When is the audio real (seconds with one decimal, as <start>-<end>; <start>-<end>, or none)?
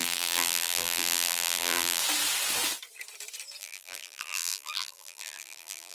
2.0-3.6